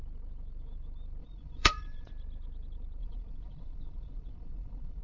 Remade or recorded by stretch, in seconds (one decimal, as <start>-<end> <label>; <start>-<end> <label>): 0.0-1.2 recorded; 1.2-2.1 remade; 2.1-3.0 recorded; 3.0-5.0 remade